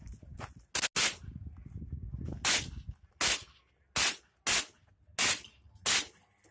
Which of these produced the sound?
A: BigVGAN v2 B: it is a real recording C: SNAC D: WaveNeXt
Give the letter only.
B